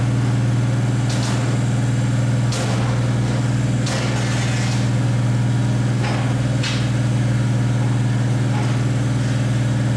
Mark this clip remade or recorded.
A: recorded